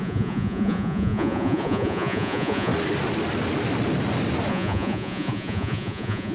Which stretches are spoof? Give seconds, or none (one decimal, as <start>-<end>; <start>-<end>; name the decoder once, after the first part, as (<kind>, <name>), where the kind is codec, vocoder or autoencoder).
0.0-2.7 (vocoder, Vocos); 4.5-6.3